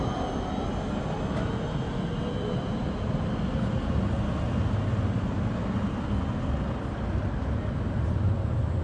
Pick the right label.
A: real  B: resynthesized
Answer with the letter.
A